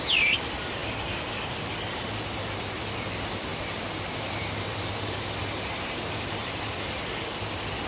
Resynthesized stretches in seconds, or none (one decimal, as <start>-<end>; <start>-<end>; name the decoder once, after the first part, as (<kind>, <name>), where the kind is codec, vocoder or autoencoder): none

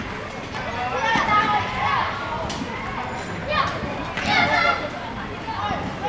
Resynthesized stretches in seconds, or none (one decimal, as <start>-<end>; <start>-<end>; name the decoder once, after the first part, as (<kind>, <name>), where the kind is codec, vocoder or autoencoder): 3.4-4.0 (vocoder, BigVGAN v2)